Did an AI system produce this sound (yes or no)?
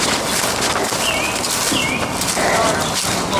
no